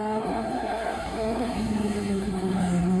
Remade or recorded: remade